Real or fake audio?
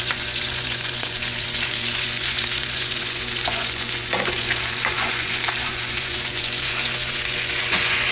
fake